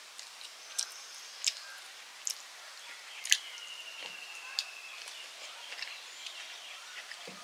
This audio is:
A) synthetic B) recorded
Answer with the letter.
B